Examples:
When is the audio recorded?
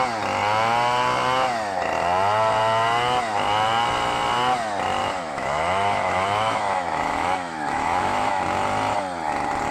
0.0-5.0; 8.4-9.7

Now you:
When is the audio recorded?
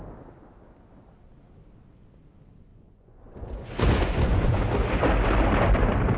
0.0-2.7; 4.6-6.2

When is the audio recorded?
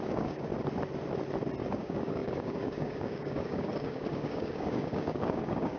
0.5-1.6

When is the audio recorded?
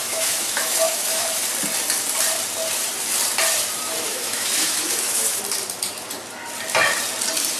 1.4-4.1; 5.4-7.6